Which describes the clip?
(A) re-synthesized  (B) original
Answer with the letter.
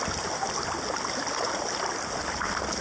B